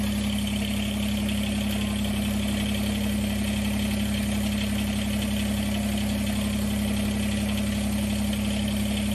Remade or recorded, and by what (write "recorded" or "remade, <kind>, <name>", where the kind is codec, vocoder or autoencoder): recorded